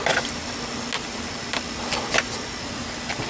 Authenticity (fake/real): real